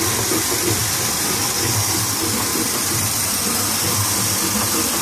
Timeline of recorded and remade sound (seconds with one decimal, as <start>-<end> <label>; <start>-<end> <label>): 0.0-0.8 recorded; 0.8-1.3 remade; 1.3-2.5 recorded; 2.5-3.3 remade; 3.3-5.0 recorded

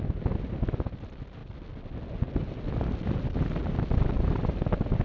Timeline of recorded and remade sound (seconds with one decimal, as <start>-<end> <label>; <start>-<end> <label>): 0.0-5.0 recorded

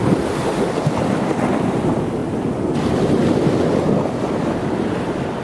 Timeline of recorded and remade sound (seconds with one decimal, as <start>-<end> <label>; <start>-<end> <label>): 0.0-0.4 remade; 0.4-1.2 recorded; 1.2-2.2 remade; 2.2-3.6 recorded; 3.6-5.4 remade

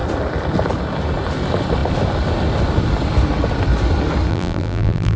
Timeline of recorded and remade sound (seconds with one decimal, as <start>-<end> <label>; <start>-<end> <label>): 0.0-4.3 recorded; 4.3-5.2 remade